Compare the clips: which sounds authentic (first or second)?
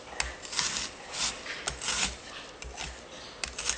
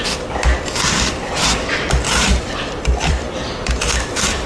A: first